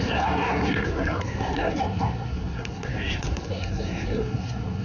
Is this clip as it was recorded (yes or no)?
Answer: no